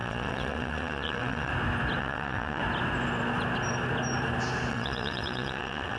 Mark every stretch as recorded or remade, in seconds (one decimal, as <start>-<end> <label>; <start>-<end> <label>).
0.0-1.5 remade; 1.5-2.0 recorded; 2.0-2.6 remade; 2.6-4.7 recorded; 4.7-6.0 remade